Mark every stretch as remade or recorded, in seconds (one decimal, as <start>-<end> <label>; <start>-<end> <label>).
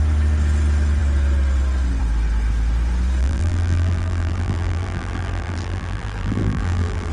0.0-3.2 recorded; 3.2-7.1 remade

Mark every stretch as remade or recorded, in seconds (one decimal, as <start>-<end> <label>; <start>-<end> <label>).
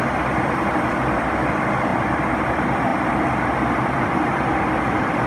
0.0-5.3 recorded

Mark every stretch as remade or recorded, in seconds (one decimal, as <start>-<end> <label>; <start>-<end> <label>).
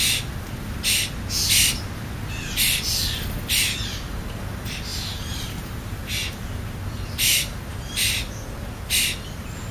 0.0-4.9 recorded; 4.9-6.0 remade; 6.0-9.7 recorded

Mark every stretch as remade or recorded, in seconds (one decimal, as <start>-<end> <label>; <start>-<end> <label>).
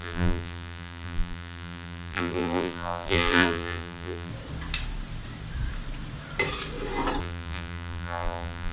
0.0-4.3 remade; 4.3-7.2 recorded; 7.2-8.7 remade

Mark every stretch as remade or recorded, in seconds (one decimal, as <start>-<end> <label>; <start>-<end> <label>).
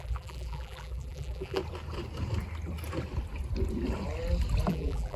0.0-1.6 remade; 1.6-4.7 recorded; 4.7-5.2 remade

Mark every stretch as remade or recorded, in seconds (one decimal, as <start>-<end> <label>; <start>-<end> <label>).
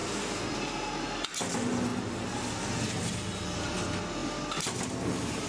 0.0-5.5 recorded